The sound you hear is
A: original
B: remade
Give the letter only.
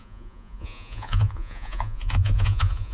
B